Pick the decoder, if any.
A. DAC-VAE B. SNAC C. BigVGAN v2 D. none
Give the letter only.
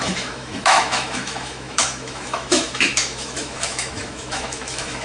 A